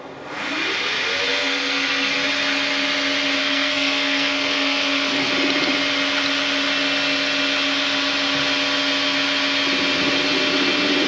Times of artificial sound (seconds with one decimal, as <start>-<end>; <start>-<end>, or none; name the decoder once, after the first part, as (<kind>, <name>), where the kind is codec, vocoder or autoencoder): 1.3-2.1 (codec, SNAC); 3.4-5.3